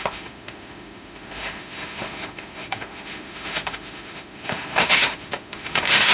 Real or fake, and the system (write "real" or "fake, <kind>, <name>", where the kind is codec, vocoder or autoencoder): fake, autoencoder, DAC-VAE